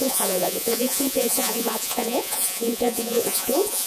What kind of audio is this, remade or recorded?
remade